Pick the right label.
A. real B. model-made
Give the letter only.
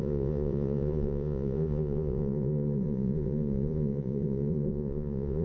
B